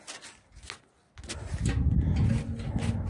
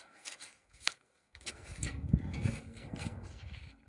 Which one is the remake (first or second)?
second